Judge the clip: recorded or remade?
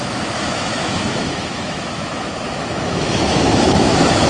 remade